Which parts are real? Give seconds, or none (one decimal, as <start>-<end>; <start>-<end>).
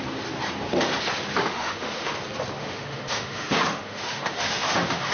0.0-1.5; 2.1-2.6